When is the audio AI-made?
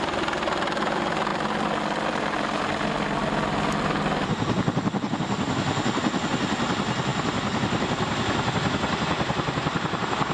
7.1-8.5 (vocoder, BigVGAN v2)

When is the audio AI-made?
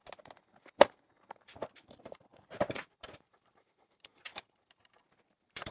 1.2-5.7 (vocoder, BigVGAN v2)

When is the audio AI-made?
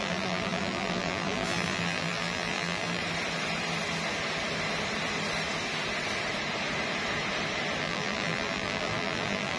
0.0-3.0 (vocoder, BigVGAN v2); 7.8-9.6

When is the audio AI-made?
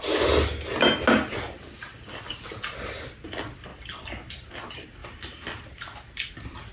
3.7-4.5 (vocoder, BigVGAN v2); 5.0-6.3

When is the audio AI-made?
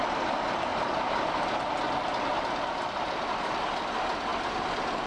none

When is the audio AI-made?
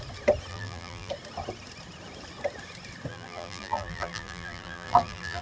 0.5-1.1 (vocoder, BigVGAN v2); 3.1-5.4